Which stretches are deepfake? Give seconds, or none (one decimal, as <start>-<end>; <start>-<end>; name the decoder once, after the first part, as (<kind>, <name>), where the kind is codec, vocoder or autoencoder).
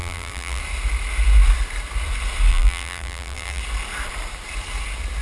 0.0-0.6 (vocoder, BigVGAN v2); 2.5-3.6